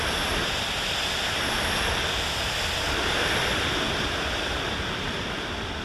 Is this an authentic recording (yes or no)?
yes